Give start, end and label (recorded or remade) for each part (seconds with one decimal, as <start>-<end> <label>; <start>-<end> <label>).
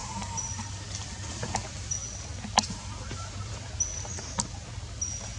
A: 0.0-1.1 remade; 1.1-5.4 recorded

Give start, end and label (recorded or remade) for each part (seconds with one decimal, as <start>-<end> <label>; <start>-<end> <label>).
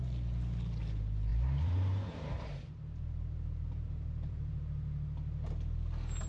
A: 0.0-1.3 recorded; 1.3-4.6 remade; 4.6-6.3 recorded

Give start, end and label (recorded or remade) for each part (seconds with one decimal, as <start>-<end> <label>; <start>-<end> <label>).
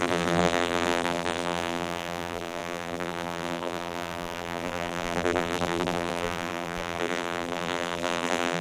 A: 0.0-8.6 remade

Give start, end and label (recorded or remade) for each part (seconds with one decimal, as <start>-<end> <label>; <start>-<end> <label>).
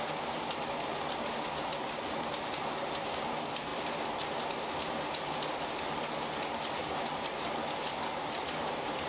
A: 0.0-9.1 recorded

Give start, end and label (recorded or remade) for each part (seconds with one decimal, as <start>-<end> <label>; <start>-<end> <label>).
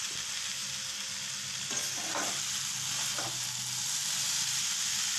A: 0.0-5.2 recorded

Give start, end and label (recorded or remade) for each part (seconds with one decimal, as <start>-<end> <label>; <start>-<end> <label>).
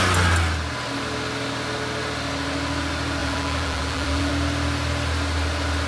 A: 0.0-3.2 recorded; 3.2-4.3 remade; 4.3-5.9 recorded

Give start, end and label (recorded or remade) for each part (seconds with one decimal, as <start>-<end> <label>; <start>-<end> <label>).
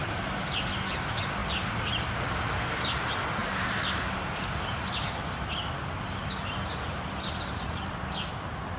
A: 0.0-3.4 recorded; 3.4-4.1 remade; 4.1-8.8 recorded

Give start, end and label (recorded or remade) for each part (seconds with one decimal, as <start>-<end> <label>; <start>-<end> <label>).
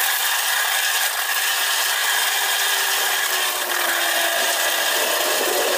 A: 0.0-2.0 recorded; 2.0-3.3 remade; 3.3-5.8 recorded